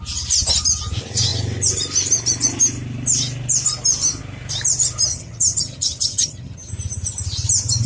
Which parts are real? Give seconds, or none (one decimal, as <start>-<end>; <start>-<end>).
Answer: 0.0-5.1; 6.7-7.9